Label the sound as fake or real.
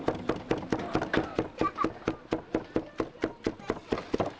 real